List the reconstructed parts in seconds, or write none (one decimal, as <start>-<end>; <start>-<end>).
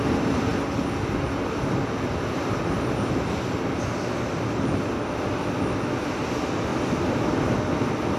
none